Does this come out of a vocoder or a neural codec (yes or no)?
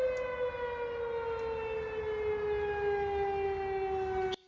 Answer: no